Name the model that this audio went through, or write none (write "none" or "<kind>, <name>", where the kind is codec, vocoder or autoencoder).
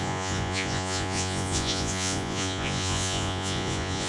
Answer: vocoder, Vocos